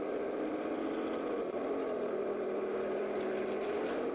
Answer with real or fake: real